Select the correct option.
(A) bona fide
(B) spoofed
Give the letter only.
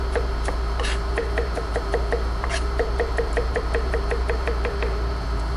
B